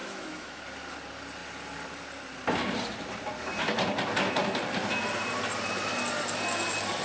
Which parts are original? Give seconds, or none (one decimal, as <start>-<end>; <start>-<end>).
0.6-7.0